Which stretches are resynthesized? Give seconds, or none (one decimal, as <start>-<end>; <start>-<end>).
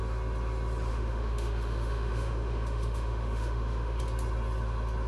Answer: 0.9-4.0